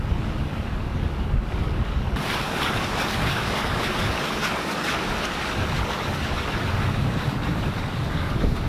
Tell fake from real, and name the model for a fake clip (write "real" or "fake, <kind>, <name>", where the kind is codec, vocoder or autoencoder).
fake, codec, DAC